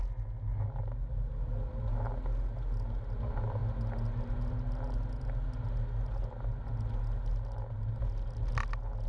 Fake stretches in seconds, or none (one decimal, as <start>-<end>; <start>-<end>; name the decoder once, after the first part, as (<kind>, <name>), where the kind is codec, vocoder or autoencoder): none

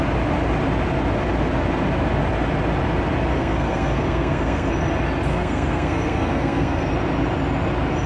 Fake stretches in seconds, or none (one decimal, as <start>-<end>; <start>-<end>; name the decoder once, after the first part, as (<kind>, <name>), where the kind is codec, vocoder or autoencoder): 3.3-4.7 (codec, SNAC); 5.3-6.9

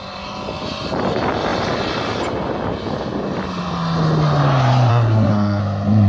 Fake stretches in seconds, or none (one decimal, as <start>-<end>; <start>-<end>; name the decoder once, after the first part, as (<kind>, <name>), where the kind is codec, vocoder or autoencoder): 4.9-5.6 (codec, SNAC)

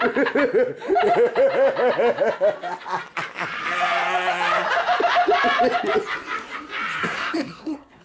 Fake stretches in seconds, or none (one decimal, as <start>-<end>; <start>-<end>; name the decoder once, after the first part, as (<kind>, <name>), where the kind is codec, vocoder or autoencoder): 7.0-8.0 (codec, SNAC)

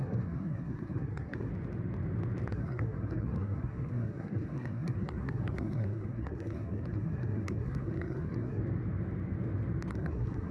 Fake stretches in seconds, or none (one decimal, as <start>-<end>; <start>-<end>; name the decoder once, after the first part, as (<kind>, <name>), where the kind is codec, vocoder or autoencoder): 0.0-1.5 (codec, SNAC); 2.5-8.6; 9.9-10.5

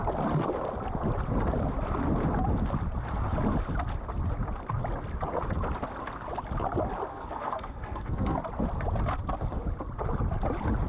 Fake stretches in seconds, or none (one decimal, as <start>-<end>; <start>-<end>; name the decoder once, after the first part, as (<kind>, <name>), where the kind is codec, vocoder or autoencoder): 7.1-8.4 (codec, SNAC)

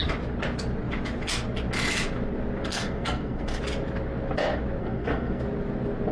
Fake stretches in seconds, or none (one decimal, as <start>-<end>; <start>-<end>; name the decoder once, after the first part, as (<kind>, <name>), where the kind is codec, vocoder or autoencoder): 2.7-3.6 (codec, SNAC); 4.8-5.4